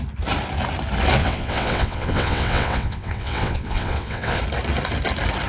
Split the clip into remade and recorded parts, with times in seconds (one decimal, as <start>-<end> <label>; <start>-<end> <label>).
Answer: 0.0-1.2 recorded; 1.2-4.4 remade; 4.4-5.5 recorded